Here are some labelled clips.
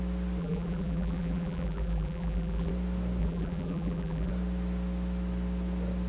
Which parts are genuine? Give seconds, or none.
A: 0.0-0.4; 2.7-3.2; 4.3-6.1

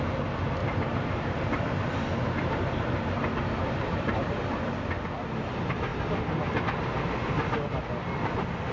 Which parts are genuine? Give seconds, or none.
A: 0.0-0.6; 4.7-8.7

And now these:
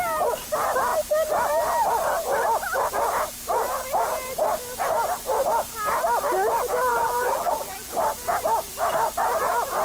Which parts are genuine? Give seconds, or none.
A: 0.0-6.9; 7.9-9.8